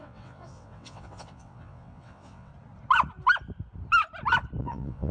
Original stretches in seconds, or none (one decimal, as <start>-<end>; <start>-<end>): 2.5-4.6

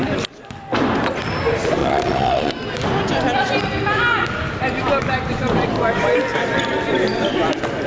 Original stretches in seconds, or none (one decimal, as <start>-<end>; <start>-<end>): 0.0-1.8; 2.5-7.9

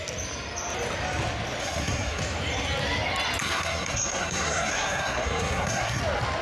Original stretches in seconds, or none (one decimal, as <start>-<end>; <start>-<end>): 0.0-1.6; 2.2-3.4; 6.0-6.4